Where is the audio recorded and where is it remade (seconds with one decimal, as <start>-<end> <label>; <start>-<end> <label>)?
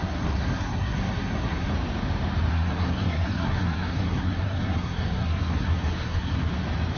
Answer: 0.0-1.7 remade; 1.7-2.5 recorded; 2.5-6.5 remade; 6.5-7.0 recorded